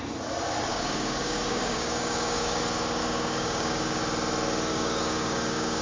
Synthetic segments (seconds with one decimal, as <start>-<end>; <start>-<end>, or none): 0.7-2.6; 3.0-4.0; 4.7-5.8